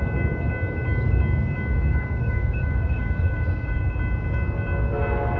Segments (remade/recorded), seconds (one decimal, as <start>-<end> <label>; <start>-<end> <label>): 0.0-1.9 recorded; 1.9-3.8 remade; 3.8-5.4 recorded